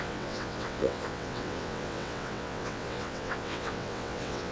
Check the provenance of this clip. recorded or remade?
remade